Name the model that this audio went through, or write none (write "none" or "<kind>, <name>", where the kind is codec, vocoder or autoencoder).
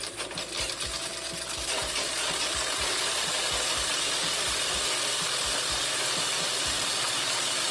none